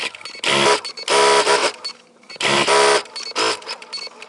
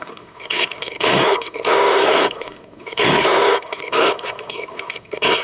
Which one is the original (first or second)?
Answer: first